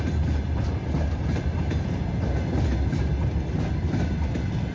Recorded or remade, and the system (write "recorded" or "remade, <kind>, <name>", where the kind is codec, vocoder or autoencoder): recorded